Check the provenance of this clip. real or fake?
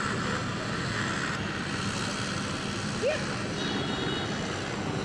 real